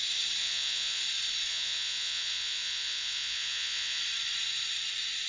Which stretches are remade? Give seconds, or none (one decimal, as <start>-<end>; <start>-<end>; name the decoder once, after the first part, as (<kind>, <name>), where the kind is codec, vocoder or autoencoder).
0.4-1.0 (vocoder, Vocos); 1.5-4.0